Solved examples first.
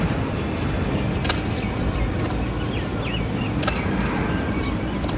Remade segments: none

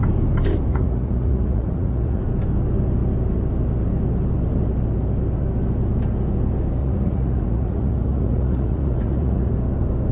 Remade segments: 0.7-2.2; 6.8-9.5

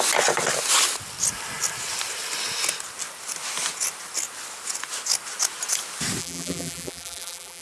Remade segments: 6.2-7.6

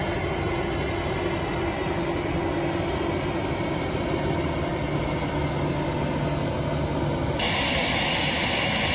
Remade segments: none

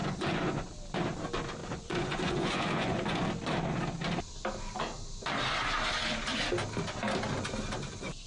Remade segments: 0.0-0.7; 1.6-3.2

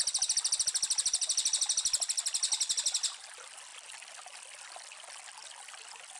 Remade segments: none